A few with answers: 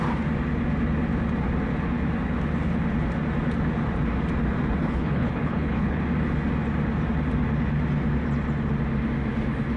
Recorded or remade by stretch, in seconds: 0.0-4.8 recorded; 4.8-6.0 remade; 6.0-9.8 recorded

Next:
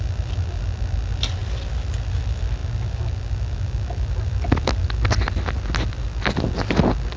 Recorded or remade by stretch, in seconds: 0.0-7.2 recorded

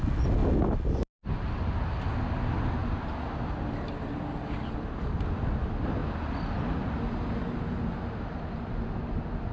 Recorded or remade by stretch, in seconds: 0.0-9.5 recorded

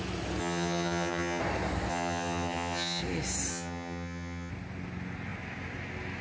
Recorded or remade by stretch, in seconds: 0.0-0.4 recorded; 0.4-1.4 remade; 1.4-1.9 recorded; 1.9-3.0 remade; 3.0-3.5 recorded; 3.5-4.5 remade; 4.5-6.2 recorded

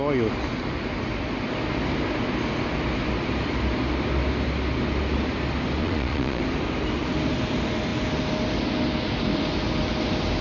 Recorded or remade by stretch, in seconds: 0.0-5.8 recorded; 5.8-6.4 remade; 6.4-10.4 recorded

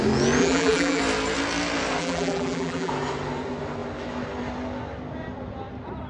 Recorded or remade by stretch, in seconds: 0.0-0.4 recorded; 0.4-1.0 remade; 1.0-2.0 recorded; 2.0-2.9 remade; 2.9-6.1 recorded

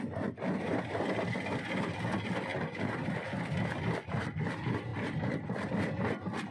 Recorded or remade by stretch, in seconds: 0.0-4.9 recorded; 4.9-5.7 remade; 5.7-6.5 recorded